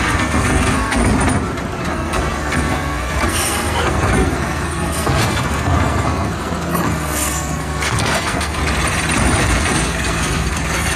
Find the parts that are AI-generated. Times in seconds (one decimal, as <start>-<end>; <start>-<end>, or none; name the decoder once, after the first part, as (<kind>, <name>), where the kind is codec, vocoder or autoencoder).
0.0-1.0 (codec, SNAC); 1.9-8.6; 9.4-11.0